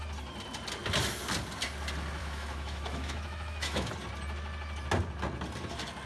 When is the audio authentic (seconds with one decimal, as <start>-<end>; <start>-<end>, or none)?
0.0-2.2; 3.9-6.1